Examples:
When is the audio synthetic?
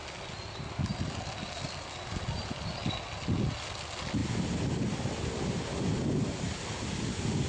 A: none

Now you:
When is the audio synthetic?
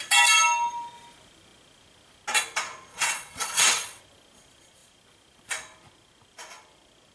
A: 2.9-4.0 (vocoder, WaveNeXt)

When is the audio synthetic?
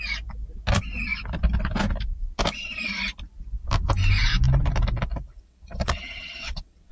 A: 5.3-6.9 (vocoder, WaveNeXt)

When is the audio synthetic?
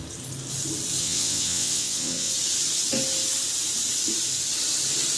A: 1.0-2.3 (vocoder, WaveNeXt)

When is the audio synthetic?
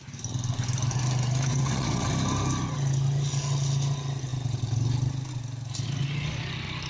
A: 1.5-2.1 (vocoder, WaveNeXt)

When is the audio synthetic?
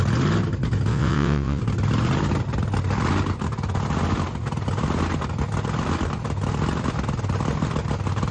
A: 0.9-1.6 (vocoder, WaveNeXt)